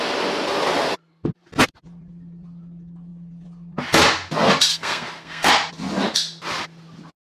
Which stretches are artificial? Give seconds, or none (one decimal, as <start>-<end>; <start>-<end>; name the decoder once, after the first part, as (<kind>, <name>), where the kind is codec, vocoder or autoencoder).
4.7-5.5 (codec, SNAC)